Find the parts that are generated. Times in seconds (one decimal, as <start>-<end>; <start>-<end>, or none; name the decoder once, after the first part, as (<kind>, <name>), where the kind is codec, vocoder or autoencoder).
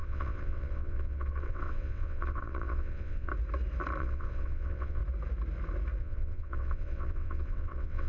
0.0-3.3 (vocoder, WaveNeXt); 4.0-5.0; 6.0-8.1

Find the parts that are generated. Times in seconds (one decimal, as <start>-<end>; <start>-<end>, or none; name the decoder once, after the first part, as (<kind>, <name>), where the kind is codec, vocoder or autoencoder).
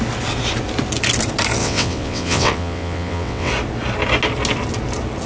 1.6-3.5 (vocoder, WaveNeXt)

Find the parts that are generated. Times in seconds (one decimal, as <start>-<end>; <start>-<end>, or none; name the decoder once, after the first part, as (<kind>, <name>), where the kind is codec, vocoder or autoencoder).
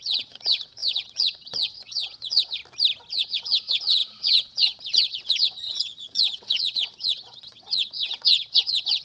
0.0-2.6 (vocoder, WaveNeXt); 3.1-9.0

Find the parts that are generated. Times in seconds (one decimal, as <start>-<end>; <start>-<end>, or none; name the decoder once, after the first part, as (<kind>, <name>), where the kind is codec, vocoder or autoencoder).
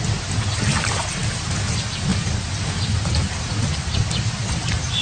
none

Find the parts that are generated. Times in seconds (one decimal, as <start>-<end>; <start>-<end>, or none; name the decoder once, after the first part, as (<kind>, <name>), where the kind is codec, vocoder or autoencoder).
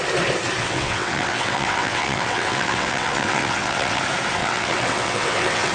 0.6-4.0 (vocoder, WaveNeXt); 4.4-5.7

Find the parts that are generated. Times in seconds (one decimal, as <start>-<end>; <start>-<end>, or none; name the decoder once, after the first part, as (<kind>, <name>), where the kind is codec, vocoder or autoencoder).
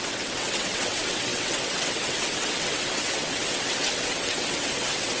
0.0-5.2 (vocoder, WaveNeXt)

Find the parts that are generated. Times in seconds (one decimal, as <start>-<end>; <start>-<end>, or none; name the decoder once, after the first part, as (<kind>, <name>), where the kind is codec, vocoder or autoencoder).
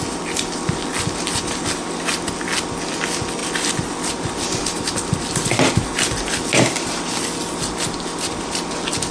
none